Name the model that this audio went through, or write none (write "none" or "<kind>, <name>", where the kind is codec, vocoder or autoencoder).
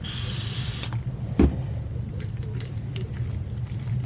none